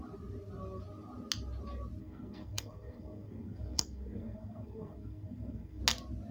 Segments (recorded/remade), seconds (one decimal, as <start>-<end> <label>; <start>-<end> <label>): 0.0-2.0 recorded; 2.0-5.8 remade; 5.8-6.3 recorded